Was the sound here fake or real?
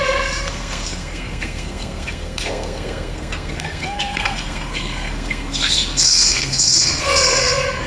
fake